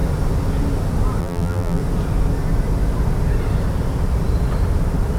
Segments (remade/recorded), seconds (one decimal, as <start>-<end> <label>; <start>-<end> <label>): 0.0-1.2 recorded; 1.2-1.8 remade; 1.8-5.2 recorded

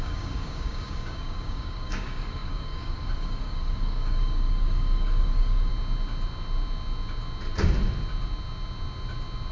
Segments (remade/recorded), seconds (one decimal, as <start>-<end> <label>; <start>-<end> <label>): 0.0-5.7 remade; 5.7-9.5 recorded

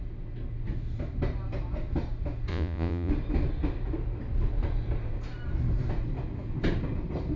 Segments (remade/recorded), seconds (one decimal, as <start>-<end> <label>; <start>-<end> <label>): 0.0-2.5 recorded; 2.5-3.1 remade; 3.1-7.4 recorded